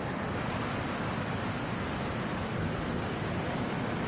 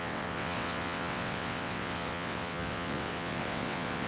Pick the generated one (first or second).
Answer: second